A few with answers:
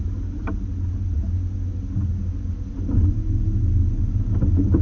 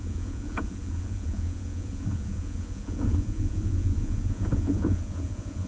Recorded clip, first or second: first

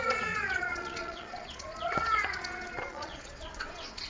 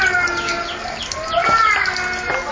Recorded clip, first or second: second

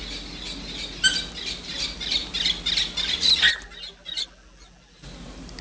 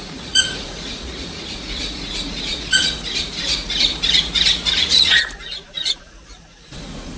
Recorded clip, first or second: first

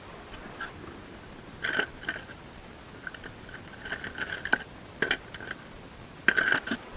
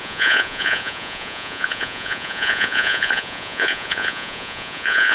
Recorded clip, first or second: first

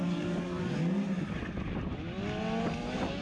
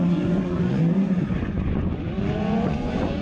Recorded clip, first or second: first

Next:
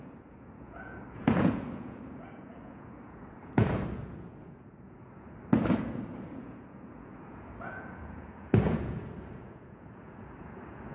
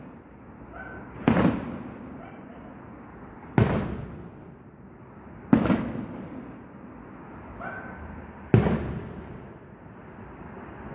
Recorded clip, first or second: second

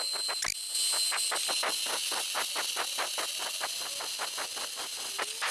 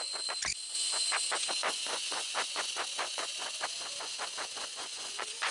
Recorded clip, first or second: first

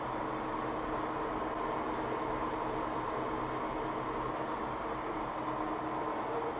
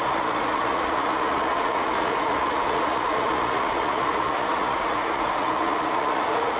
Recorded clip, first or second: first